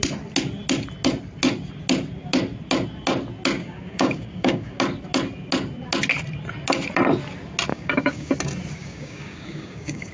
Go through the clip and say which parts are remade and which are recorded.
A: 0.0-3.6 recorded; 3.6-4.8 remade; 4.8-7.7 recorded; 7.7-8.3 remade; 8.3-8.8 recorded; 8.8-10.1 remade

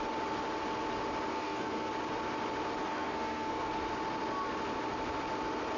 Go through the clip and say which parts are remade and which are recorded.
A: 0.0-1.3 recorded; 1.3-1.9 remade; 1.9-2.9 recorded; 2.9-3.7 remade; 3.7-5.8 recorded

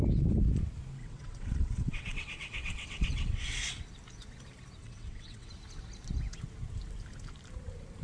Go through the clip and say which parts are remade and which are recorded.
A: 0.0-1.0 recorded; 1.0-3.8 remade; 3.8-4.8 recorded; 4.8-5.5 remade; 5.5-8.0 recorded